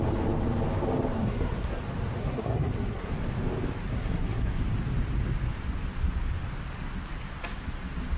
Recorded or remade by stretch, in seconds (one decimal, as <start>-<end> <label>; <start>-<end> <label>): 0.0-1.2 recorded; 1.2-1.8 remade; 1.8-2.2 recorded; 2.2-3.1 remade; 3.1-3.9 recorded; 3.9-4.6 remade; 4.6-8.2 recorded